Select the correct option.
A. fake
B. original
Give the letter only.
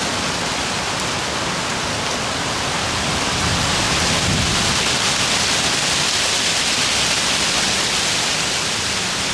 B